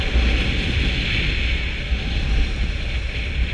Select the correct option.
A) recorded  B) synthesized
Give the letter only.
A